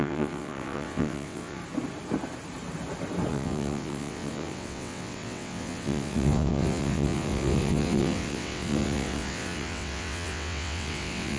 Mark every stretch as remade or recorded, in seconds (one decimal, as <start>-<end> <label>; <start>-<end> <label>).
0.0-1.6 remade; 1.6-3.3 recorded; 3.3-11.4 remade